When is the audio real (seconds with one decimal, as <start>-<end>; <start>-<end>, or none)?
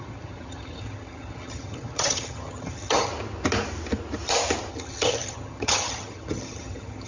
3.1-4.7